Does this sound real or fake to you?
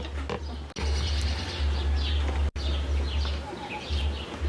real